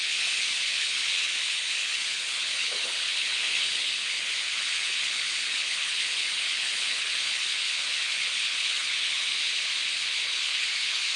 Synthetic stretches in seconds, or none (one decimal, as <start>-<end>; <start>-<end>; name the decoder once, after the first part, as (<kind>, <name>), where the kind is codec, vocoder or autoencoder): 0.0-11.2 (codec, HILCodec)

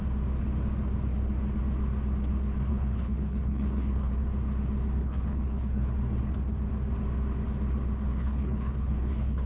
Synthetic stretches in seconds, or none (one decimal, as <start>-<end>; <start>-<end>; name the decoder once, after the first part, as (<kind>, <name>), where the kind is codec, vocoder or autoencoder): 2.7-4.1 (codec, HILCodec); 5.0-5.9; 8.1-9.5

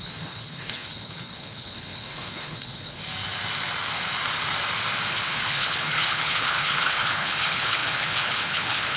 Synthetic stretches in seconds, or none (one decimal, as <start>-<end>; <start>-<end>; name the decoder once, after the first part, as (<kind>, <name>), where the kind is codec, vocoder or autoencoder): 0.0-3.0 (codec, HILCodec); 5.1-9.0